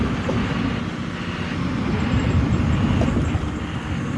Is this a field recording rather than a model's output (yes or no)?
yes